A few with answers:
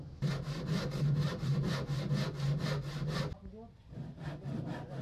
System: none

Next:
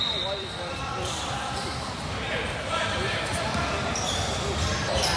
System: vocoder, BigVGAN v2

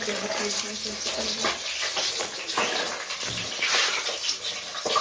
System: none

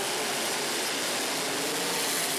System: none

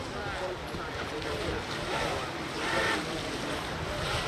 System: none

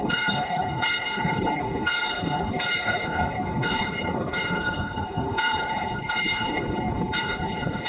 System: codec, HILCodec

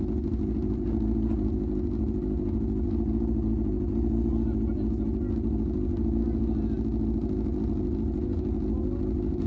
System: none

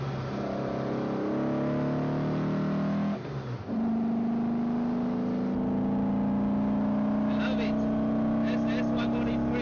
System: none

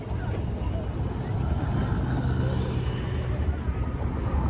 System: none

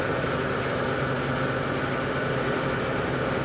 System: none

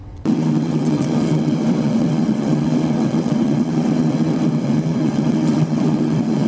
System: vocoder, WaveNeXt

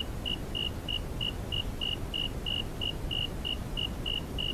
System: none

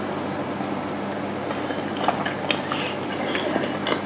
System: none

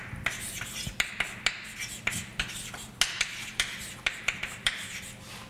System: none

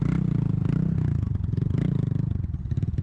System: none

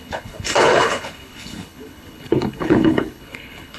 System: codec, HILCodec